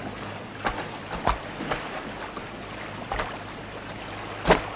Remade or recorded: recorded